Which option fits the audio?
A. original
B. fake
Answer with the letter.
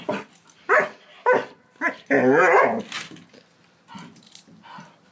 A